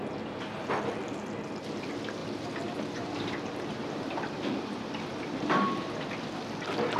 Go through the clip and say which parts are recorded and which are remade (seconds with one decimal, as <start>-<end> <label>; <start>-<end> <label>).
0.0-2.2 recorded; 2.2-5.8 remade; 5.8-7.0 recorded